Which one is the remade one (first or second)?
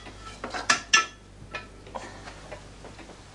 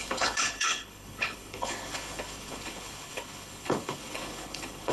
second